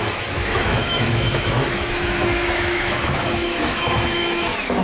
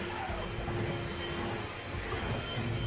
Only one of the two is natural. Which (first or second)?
second